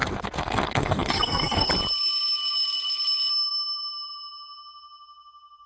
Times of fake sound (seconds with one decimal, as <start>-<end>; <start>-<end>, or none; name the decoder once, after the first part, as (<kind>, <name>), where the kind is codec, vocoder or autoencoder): 0.0-1.7 (codec, SNAC)